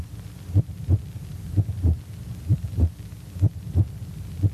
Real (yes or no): yes